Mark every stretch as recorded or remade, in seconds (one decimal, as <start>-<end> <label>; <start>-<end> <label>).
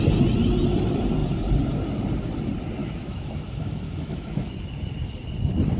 0.0-2.8 recorded; 2.8-4.5 remade; 4.5-5.8 recorded